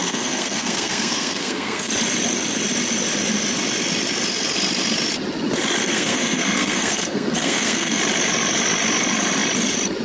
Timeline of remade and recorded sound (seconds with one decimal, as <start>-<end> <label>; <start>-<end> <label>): 0.0-1.9 remade; 1.9-5.8 recorded; 5.8-8.0 remade; 8.0-10.0 recorded